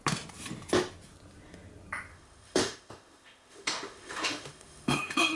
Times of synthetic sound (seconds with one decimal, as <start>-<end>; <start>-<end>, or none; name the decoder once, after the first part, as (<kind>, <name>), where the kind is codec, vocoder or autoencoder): 2.1-5.4 (autoencoder, DAC-VAE)